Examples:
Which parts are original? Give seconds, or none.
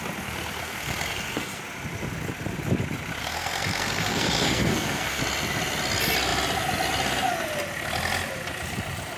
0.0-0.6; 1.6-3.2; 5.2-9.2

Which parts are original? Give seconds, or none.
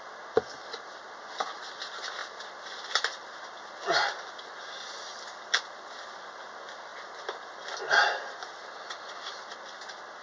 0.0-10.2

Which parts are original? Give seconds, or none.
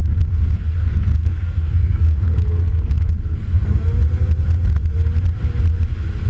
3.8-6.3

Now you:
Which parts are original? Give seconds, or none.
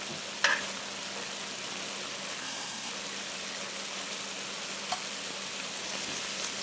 0.0-2.4; 2.9-6.6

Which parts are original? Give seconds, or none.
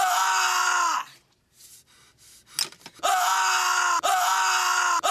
0.0-5.1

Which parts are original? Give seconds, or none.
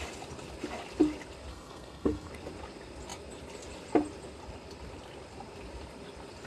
0.0-1.5; 2.3-6.5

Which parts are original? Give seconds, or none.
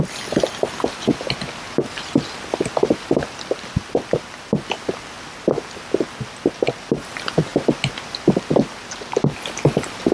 0.0-10.1